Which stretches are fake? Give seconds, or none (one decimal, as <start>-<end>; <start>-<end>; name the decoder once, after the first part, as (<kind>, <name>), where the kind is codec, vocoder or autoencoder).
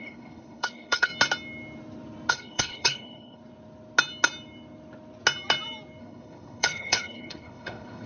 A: 0.0-1.1 (codec, HILCodec); 2.3-3.4; 6.0-8.1